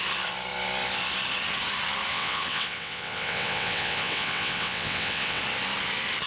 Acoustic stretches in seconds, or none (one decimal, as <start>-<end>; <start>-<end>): 0.0-2.1; 5.4-6.3